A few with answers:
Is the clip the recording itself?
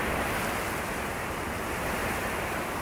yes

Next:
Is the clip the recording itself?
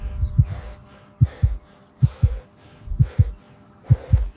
yes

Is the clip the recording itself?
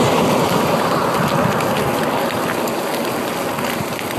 yes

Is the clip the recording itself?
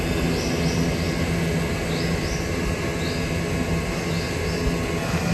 yes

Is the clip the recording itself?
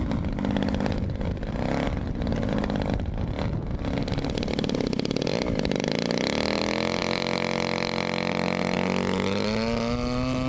yes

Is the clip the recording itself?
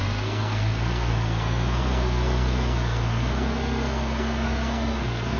no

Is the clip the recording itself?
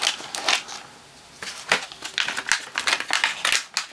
yes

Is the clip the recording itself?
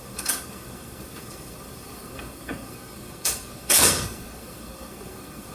no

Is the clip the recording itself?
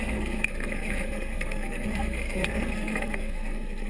no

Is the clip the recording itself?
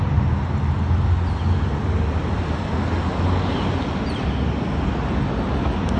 yes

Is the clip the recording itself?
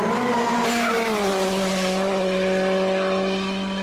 yes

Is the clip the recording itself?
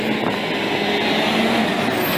yes